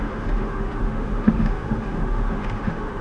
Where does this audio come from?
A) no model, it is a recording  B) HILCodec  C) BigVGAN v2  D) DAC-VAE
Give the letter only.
D